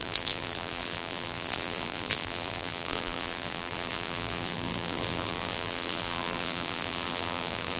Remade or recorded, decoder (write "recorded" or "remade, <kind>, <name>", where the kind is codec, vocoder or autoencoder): remade, vocoder, BigVGAN v2